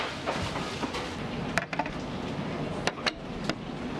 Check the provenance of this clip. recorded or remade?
recorded